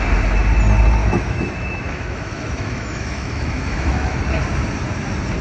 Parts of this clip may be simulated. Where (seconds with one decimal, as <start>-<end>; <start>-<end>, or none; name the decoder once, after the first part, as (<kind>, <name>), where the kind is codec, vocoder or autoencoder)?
1.0-4.2 (autoencoder, DAC-VAE)